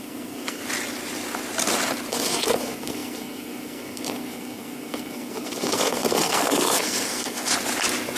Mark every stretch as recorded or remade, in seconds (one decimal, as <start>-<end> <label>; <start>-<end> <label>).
0.0-0.6 remade; 0.6-2.1 recorded; 2.1-7.5 remade; 7.5-8.2 recorded